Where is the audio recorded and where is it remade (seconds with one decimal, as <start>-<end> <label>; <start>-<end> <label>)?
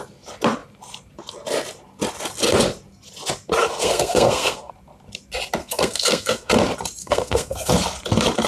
0.0-3.6 recorded; 3.6-4.7 remade; 4.7-5.6 recorded; 5.6-6.5 remade; 6.5-7.0 recorded; 7.0-7.7 remade; 7.7-8.5 recorded